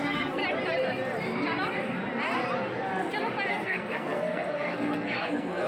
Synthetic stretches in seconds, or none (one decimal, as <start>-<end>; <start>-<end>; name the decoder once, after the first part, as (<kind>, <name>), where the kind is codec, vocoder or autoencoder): 0.0-0.4 (codec, SNAC); 3.5-5.7